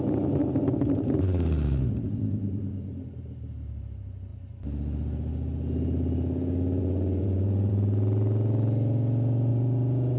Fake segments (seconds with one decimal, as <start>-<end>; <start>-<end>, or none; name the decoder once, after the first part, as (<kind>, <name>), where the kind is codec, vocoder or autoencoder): 0.4-2.6 (vocoder, BigVGAN v2); 6.8-7.7; 9.5-10.2